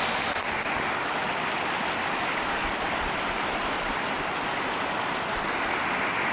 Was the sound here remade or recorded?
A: recorded